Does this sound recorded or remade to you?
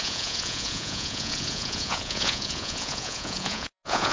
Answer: remade